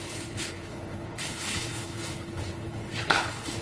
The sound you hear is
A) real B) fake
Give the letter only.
B